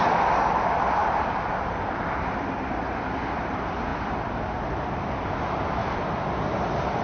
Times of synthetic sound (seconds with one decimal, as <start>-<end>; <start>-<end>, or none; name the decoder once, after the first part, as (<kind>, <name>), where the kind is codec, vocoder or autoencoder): 5.8-7.0 (vocoder, BigVGAN v2)